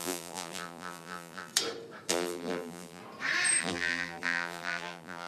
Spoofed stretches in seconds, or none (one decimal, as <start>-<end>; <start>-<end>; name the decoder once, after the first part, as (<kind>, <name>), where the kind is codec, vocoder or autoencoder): 0.0-1.5 (vocoder, BigVGAN v2); 2.1-3.0; 3.6-5.3